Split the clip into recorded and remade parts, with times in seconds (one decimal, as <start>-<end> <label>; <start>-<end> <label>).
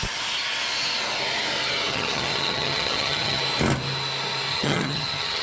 0.0-1.9 recorded; 1.9-3.4 remade; 3.4-4.5 recorded; 4.5-5.4 remade